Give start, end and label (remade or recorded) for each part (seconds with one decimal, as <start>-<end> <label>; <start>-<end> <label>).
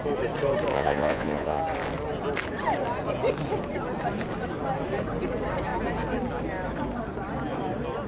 0.0-0.7 recorded; 0.7-1.6 remade; 1.6-8.1 recorded